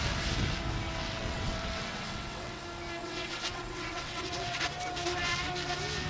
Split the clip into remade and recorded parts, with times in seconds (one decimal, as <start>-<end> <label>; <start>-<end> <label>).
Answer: 0.0-1.0 recorded; 1.0-2.6 remade; 2.6-3.0 recorded; 3.0-4.6 remade; 4.6-6.1 recorded